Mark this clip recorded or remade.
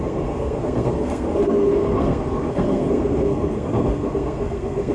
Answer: remade